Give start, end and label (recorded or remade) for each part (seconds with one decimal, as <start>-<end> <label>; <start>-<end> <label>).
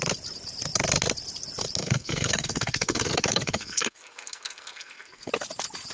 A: 0.0-1.8 recorded; 1.8-5.3 remade; 5.3-5.9 recorded